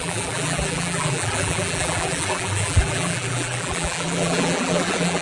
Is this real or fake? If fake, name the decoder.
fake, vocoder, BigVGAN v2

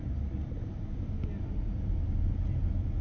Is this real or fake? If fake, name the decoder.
real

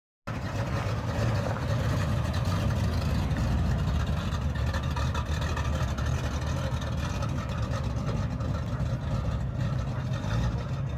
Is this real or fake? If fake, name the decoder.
real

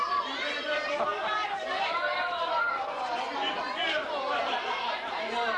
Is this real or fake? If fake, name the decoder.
fake, vocoder, BigVGAN v2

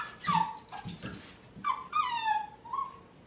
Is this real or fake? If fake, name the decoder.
real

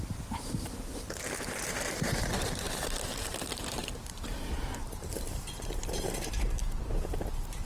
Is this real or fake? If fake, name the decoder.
fake, vocoder, BigVGAN v2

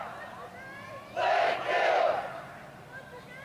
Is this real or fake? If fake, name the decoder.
real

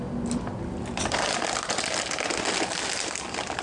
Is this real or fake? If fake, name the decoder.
real